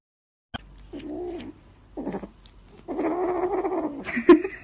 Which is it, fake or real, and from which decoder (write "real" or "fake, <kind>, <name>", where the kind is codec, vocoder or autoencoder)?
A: real